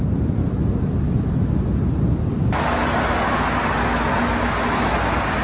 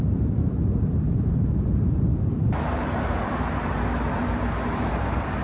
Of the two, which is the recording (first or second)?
first